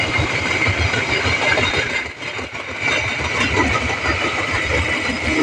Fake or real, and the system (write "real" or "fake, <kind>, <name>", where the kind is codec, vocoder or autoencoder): real